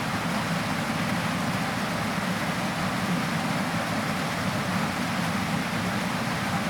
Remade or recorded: recorded